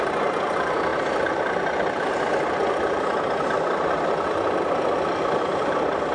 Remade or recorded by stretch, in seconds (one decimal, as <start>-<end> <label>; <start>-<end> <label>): 0.0-6.1 recorded